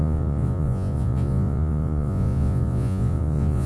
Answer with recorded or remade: remade